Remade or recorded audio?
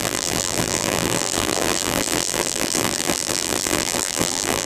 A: remade